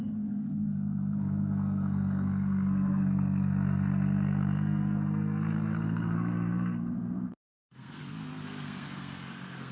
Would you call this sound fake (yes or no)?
yes